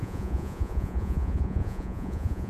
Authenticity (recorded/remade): remade